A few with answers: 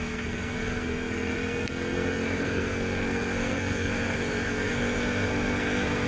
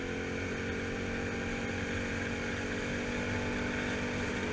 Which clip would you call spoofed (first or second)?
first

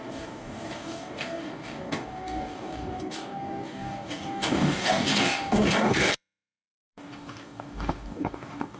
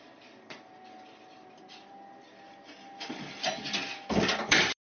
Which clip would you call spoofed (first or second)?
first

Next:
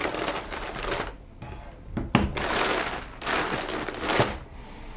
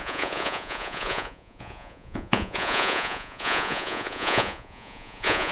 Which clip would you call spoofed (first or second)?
second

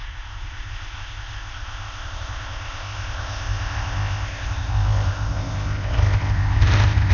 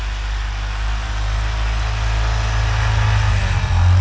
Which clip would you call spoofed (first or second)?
first